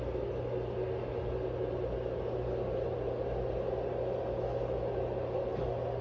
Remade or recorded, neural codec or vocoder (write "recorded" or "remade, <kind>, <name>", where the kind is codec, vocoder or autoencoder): recorded